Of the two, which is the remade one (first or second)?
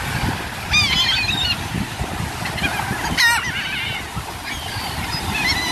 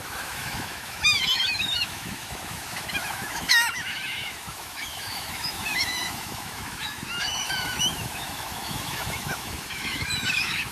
second